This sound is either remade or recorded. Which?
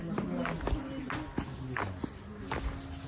recorded